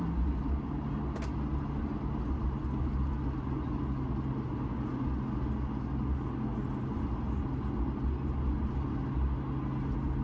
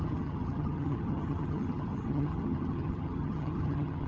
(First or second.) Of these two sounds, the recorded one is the first